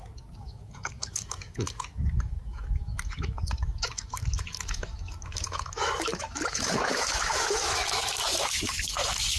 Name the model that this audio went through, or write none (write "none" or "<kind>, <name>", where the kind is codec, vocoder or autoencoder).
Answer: autoencoder, DAC-VAE